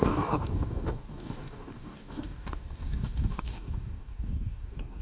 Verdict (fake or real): fake